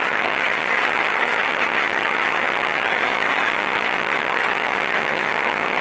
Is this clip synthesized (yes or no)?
yes